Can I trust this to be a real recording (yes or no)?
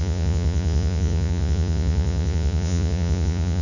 no